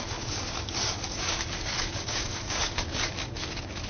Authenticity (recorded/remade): remade